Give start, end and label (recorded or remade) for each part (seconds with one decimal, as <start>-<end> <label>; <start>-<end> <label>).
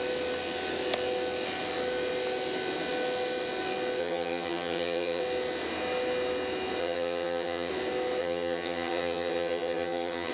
0.0-4.0 recorded; 4.0-5.2 remade; 5.2-6.8 recorded; 6.8-7.7 remade; 7.7-8.2 recorded; 8.2-10.3 remade